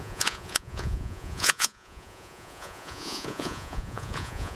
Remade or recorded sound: remade